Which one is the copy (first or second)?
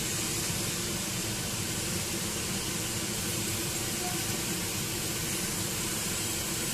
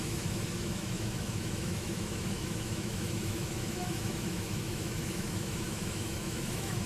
second